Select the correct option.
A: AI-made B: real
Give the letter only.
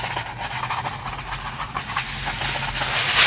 B